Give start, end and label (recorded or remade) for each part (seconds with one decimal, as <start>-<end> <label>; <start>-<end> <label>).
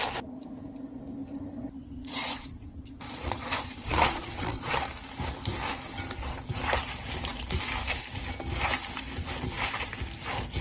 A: 0.0-1.8 recorded; 1.8-4.7 remade; 4.7-10.6 recorded